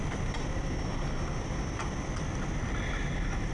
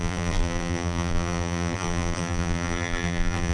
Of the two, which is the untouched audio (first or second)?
first